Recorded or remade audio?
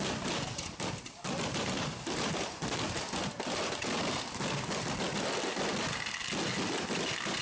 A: recorded